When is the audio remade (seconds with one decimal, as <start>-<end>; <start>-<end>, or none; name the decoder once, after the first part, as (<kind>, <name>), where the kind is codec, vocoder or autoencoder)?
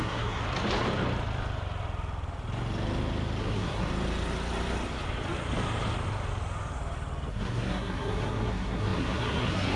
0.0-0.4 (codec, SNAC); 3.4-3.9; 7.3-9.8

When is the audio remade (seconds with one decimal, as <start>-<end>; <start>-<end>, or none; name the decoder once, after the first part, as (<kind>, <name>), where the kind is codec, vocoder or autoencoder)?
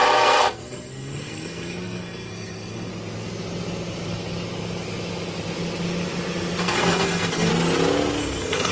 0.0-2.9 (codec, SNAC); 6.6-7.5; 8.2-8.7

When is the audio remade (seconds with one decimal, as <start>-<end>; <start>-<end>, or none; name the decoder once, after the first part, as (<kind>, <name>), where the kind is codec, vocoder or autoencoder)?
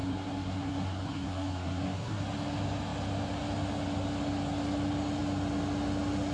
0.0-2.2 (codec, SNAC)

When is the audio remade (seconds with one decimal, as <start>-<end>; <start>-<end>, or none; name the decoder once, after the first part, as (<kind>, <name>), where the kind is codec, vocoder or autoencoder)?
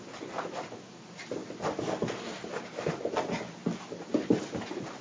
none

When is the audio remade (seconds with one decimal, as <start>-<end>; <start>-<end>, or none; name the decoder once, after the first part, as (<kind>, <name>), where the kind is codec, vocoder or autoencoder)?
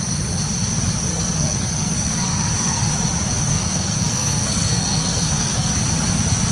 1.1-2.9 (codec, SNAC); 3.5-5.7